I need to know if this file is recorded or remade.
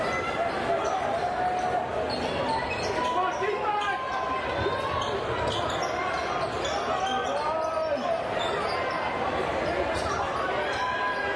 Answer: recorded